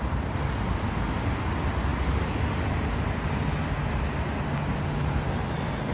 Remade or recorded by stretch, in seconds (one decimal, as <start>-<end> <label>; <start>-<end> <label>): 0.0-5.9 recorded